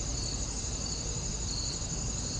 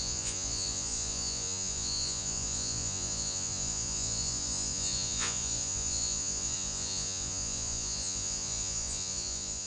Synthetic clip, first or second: second